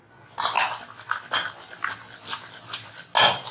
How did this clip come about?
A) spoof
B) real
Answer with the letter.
B